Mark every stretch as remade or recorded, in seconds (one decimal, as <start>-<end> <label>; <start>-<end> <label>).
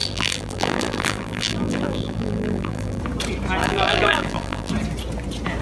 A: 0.0-3.0 remade; 3.0-3.6 recorded; 3.6-4.7 remade; 4.7-5.6 recorded